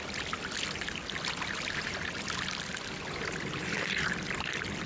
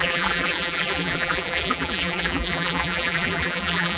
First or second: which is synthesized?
second